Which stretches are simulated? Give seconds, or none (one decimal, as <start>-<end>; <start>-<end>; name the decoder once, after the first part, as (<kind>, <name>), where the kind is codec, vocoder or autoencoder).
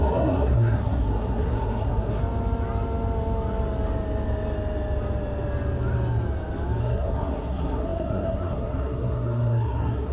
0.0-2.2 (codec, SNAC); 6.8-10.1